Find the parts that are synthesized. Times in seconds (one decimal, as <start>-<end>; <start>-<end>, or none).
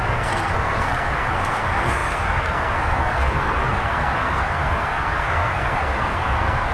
0.0-6.7